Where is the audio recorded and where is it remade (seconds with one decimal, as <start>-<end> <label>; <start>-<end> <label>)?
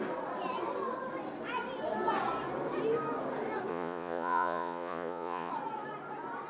0.0-3.7 recorded; 3.7-5.5 remade; 5.5-6.5 recorded